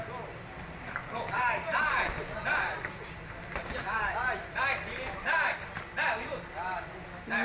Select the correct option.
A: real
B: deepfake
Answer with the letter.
A